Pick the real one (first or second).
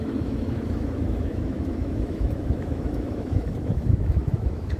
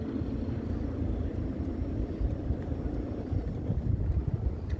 second